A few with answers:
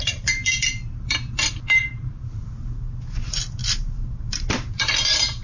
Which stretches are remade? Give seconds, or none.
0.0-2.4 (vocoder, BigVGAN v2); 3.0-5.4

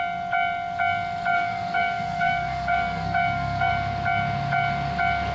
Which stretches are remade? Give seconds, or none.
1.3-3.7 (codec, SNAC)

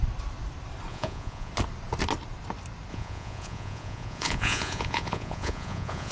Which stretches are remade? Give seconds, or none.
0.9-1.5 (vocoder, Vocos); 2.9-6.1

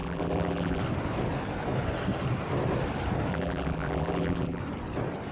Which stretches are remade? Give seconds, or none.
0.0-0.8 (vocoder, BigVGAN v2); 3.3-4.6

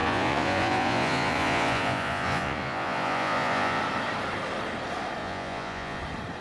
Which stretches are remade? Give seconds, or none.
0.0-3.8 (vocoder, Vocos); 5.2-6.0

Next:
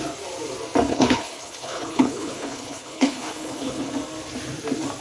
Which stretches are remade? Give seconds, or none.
0.9-3.9 (codec, HILCodec)